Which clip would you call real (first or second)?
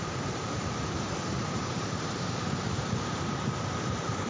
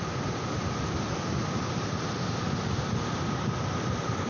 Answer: second